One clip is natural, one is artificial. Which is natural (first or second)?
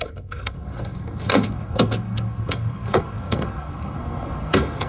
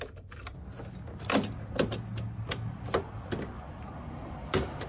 second